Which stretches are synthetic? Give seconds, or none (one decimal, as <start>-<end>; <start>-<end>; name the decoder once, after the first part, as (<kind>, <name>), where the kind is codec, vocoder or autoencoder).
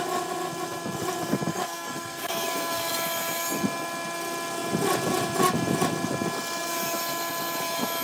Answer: 1.5-2.9 (codec, SNAC)